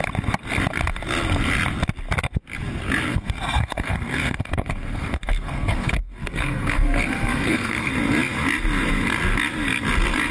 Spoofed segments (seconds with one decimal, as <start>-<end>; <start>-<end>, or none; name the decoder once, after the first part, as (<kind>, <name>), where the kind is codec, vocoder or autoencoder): 3.1-7.9 (codec, SNAC)